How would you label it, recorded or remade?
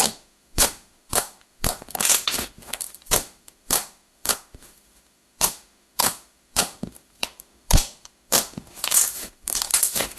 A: remade